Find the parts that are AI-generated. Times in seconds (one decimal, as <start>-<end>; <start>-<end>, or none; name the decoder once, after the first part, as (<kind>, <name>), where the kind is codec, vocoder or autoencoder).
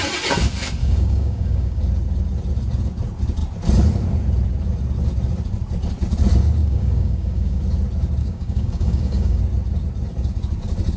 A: 0.8-1.8 (codec, DAC); 6.6-7.6; 8.2-9.4